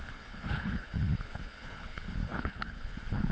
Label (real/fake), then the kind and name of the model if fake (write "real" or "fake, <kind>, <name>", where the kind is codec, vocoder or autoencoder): fake, codec, HILCodec